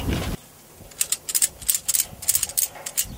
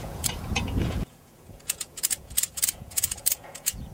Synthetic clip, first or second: second